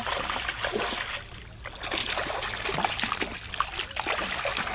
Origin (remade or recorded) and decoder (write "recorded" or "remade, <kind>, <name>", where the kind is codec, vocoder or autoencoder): recorded